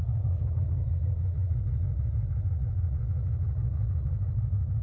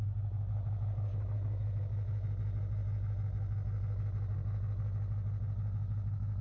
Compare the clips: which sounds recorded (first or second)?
second